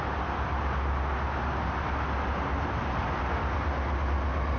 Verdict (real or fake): real